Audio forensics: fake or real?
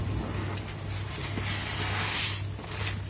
real